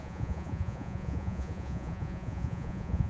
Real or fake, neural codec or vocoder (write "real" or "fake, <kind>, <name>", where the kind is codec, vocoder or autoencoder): fake, vocoder, Vocos